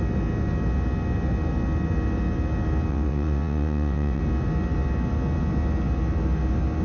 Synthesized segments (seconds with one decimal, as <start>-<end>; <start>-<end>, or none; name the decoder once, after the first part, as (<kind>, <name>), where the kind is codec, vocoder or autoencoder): 2.9-4.2 (vocoder, WaveNeXt)

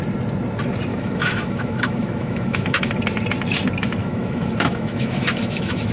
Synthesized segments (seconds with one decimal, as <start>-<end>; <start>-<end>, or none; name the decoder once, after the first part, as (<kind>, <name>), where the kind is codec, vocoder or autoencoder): 0.9-2.9 (autoencoder, DAC-VAE); 4.0-5.9